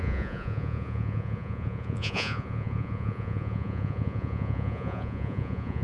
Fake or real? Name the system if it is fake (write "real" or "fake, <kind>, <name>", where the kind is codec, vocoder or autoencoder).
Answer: fake, vocoder, Vocos